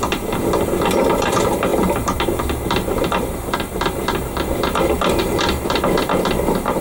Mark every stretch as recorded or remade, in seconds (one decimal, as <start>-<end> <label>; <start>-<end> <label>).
0.0-6.8 recorded